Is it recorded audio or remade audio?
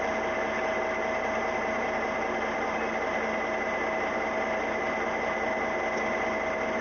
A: recorded